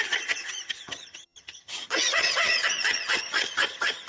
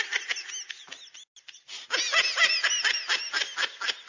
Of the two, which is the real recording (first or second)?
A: second